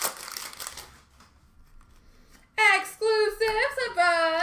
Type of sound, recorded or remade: recorded